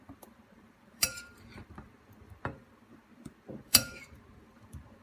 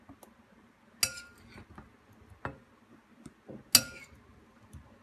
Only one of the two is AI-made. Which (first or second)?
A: first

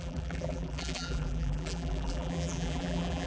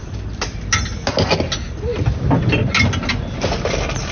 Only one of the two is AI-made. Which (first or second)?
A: first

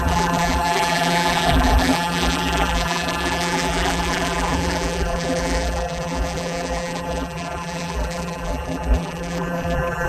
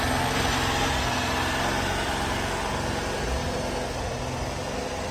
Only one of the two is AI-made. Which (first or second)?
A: first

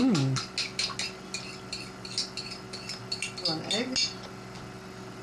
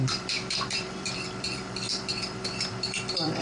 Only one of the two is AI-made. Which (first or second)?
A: second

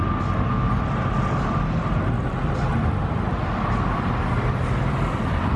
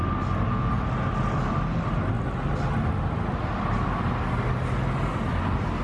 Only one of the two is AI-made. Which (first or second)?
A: first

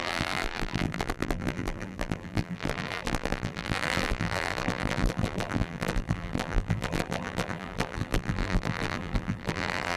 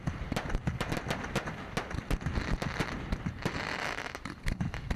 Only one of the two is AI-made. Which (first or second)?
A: first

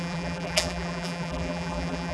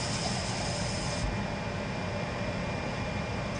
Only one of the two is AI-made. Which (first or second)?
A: first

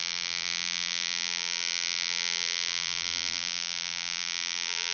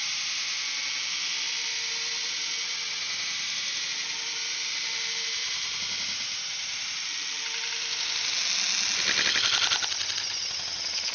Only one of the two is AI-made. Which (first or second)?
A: first